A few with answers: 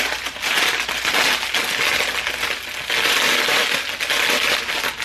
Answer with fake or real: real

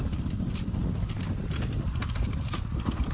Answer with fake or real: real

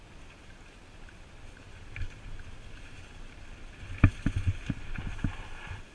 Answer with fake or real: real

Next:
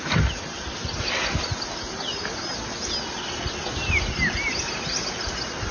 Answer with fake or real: real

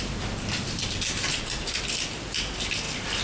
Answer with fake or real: fake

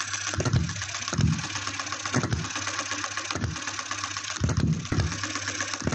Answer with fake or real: real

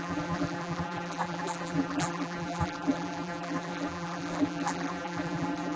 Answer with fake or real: fake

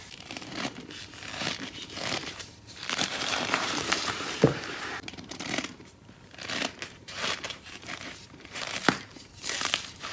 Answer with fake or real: fake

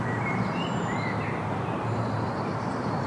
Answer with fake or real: fake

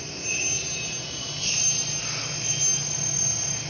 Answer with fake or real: real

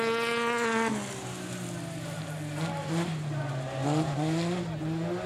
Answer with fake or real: real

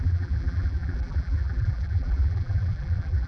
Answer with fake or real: fake